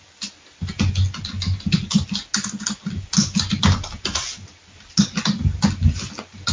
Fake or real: real